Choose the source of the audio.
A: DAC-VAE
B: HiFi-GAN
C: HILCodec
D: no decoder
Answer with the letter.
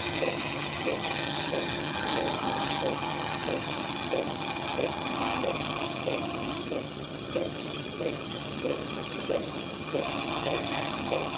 B